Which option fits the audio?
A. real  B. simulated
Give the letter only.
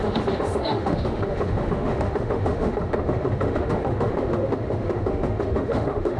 B